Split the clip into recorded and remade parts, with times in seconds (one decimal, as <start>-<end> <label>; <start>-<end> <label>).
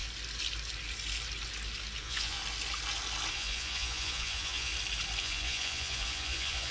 0.0-2.0 recorded; 2.0-2.4 remade; 2.4-3.3 recorded; 3.3-4.7 remade; 4.7-5.2 recorded; 5.2-6.7 remade